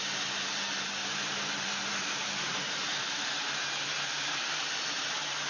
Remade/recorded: remade